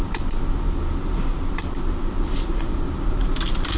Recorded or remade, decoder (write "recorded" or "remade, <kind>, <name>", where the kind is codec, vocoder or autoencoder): recorded